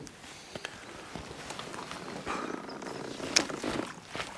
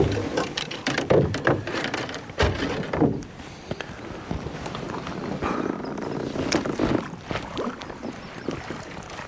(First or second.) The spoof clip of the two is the second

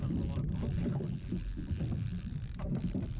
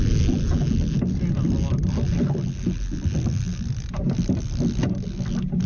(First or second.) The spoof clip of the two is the first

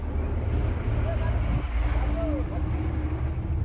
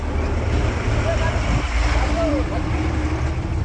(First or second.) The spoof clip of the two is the second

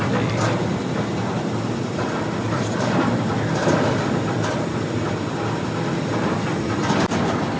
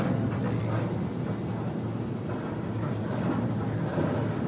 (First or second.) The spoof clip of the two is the first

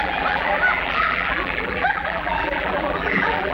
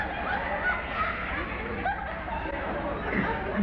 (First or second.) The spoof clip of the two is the first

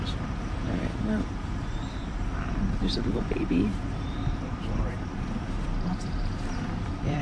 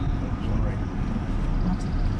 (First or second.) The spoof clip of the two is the first